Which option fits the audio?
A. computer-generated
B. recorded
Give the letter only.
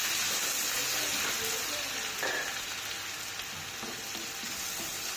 B